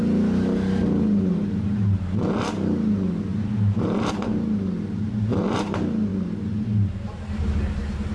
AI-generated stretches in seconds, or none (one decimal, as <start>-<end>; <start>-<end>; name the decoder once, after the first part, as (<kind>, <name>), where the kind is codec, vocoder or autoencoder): none

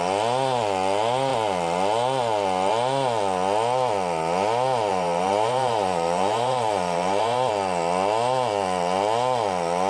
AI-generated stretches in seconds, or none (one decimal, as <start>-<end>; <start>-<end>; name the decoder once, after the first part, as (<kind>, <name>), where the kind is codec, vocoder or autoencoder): 4.9-7.5 (vocoder, BigVGAN v2)

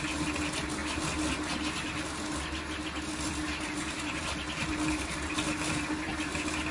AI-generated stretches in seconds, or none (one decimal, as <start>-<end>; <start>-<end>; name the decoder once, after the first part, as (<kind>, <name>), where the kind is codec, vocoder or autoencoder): none

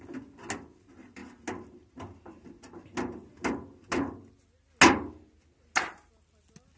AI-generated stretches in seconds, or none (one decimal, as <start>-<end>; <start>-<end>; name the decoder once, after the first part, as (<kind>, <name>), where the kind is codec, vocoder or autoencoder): none

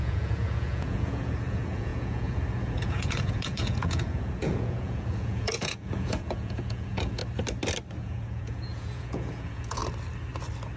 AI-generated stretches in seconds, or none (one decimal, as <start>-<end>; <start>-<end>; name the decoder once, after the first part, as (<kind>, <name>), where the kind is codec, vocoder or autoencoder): 0.0-7.2 (vocoder, Vocos); 8.0-9.8

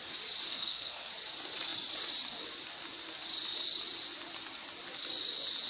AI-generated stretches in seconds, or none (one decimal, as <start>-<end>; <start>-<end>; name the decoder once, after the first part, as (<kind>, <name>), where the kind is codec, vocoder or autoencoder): 0.5-1.1 (codec, SNAC)

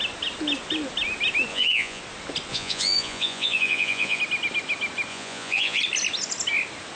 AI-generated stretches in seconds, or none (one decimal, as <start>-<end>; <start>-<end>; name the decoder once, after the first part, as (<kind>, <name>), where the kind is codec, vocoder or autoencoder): 1.5-2.0 (vocoder, Vocos); 2.5-4.2; 5.1-5.8